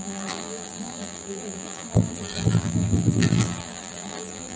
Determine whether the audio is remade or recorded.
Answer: remade